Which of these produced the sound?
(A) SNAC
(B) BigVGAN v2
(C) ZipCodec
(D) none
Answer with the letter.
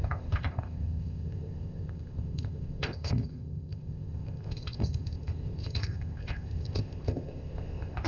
C